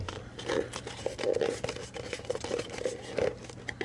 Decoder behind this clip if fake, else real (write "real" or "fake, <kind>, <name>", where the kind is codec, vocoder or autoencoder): real